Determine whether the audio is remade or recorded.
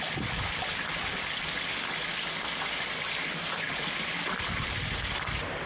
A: recorded